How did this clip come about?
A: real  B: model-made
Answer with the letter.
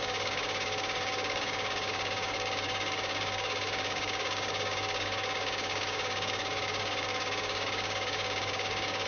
B